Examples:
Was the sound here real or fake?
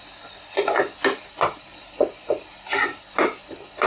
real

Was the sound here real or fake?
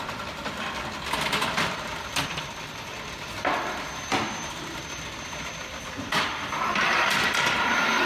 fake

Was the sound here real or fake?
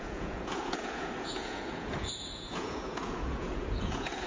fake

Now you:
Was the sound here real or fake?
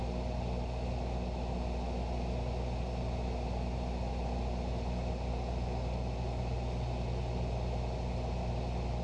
real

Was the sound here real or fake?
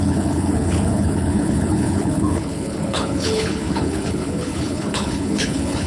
fake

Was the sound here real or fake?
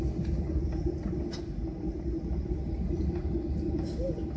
real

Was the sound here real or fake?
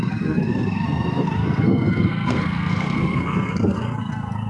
fake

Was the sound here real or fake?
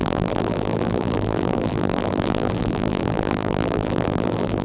fake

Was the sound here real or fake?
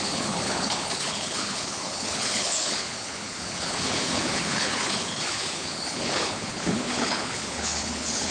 fake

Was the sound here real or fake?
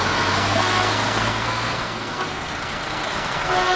fake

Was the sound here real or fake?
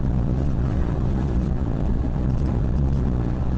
fake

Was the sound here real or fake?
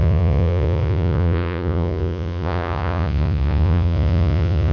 fake